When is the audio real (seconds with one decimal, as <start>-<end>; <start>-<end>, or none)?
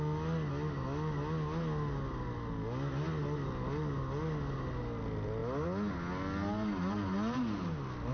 0.0-8.1